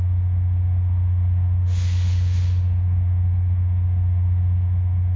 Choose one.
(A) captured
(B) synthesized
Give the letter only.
B